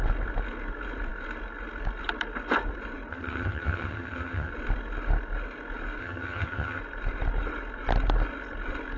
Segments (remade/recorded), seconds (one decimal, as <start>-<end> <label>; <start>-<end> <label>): 0.0-3.1 recorded; 3.1-4.5 remade; 4.5-6.0 recorded; 6.0-6.8 remade; 6.8-9.0 recorded